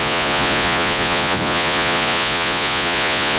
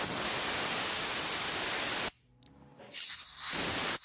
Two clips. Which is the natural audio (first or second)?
second